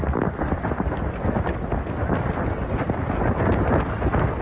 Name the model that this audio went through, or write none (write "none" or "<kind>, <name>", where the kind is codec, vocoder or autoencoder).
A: none